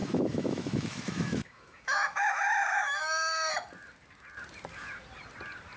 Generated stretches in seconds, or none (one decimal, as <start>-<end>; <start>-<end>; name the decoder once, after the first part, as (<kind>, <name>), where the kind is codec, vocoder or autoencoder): 0.0-3.5 (autoencoder, DAC-VAE)